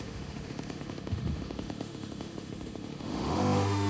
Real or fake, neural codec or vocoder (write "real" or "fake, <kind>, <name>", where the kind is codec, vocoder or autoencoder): fake, autoencoder, DAC-VAE